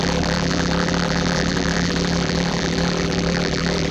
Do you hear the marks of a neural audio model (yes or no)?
yes